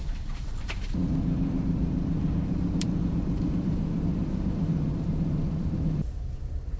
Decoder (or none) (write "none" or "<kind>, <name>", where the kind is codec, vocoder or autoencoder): vocoder, BigVGAN v2